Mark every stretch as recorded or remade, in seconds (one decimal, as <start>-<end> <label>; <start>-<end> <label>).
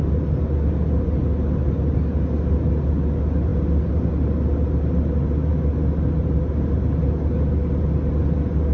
0.0-8.7 recorded